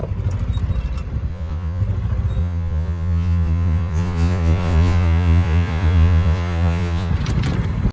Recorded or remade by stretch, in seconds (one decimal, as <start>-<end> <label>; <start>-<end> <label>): 0.0-1.3 recorded; 1.3-1.8 remade; 1.8-2.4 recorded; 2.4-7.1 remade; 7.1-7.9 recorded